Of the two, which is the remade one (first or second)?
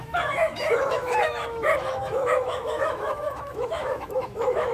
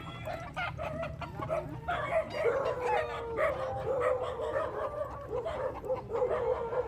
first